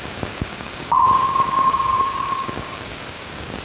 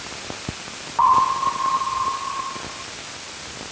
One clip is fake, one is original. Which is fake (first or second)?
first